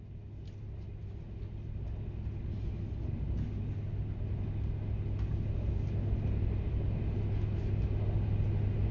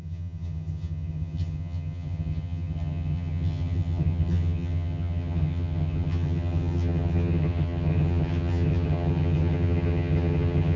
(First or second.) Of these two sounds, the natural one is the first